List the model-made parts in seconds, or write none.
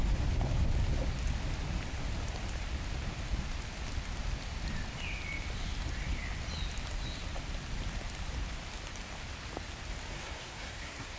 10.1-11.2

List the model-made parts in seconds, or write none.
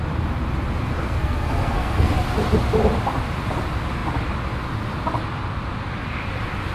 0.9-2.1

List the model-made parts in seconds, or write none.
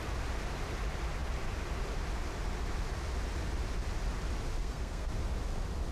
4.6-5.1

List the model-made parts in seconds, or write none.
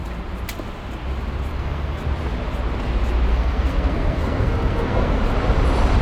1.5-2.0; 3.3-5.2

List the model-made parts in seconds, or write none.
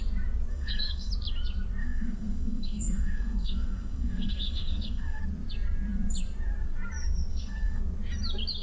0.5-1.1; 1.8-5.2; 7.3-7.8